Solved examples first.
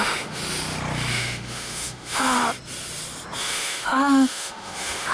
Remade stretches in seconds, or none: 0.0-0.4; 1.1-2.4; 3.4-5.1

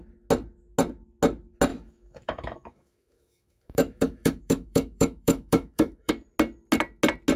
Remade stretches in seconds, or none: 1.7-6.1

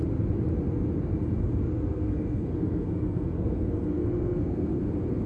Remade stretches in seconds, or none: 1.6-4.8

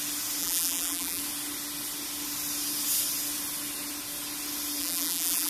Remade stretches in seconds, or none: 0.4-1.2; 4.8-5.5